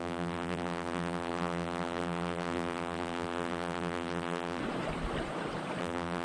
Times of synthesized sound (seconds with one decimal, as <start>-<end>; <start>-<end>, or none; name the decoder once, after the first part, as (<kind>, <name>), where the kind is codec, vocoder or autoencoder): 0.0-4.6 (vocoder, BigVGAN v2); 5.8-6.2